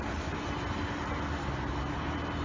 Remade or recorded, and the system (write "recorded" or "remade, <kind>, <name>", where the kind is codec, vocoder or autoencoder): recorded